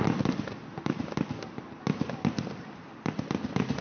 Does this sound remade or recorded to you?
recorded